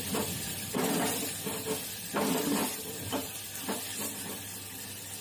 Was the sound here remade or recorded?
recorded